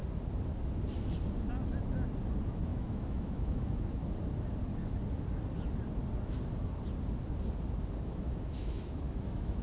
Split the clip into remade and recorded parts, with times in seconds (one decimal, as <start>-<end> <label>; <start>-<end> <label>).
0.0-2.3 recorded; 2.3-4.0 remade; 4.0-8.0 recorded; 8.0-9.6 remade